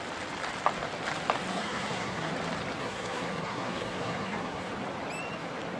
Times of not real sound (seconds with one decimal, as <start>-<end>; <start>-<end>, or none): 1.5-2.3; 2.8-4.7